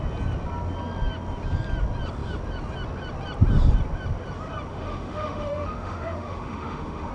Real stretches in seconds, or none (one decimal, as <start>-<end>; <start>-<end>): 0.0-4.7